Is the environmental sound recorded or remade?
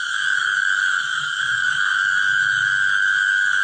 remade